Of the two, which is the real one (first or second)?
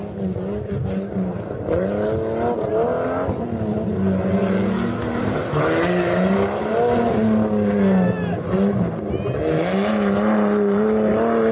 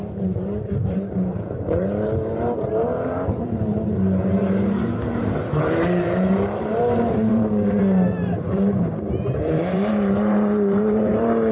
first